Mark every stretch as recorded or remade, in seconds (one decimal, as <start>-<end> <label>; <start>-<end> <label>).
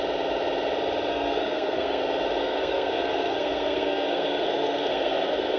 0.0-1.1 recorded; 1.1-2.0 remade; 2.0-2.4 recorded; 2.4-5.6 remade